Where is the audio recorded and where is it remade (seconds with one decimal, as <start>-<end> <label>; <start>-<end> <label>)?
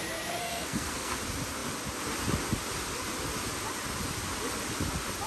0.0-0.4 recorded; 0.4-1.2 remade; 1.2-5.3 recorded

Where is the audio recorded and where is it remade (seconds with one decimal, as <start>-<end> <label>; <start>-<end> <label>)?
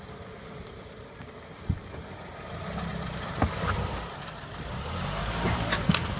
0.0-6.2 recorded